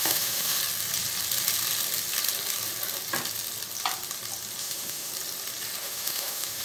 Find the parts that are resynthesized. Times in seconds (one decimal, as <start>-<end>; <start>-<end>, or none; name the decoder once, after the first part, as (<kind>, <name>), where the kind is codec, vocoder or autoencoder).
0.0-0.6 (autoencoder, DAC-VAE); 4.6-5.1; 5.8-6.6